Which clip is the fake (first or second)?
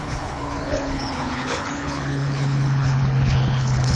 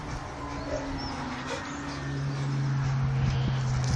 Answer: first